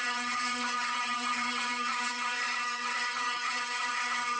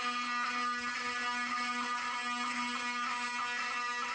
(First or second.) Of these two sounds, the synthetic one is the first